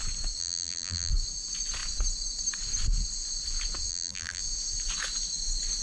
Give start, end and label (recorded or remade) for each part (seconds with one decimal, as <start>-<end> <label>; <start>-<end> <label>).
0.0-0.4 recorded; 0.4-1.1 remade; 1.1-3.9 recorded; 3.9-4.4 remade; 4.4-5.8 recorded